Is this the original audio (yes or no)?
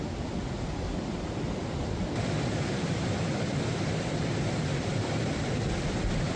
yes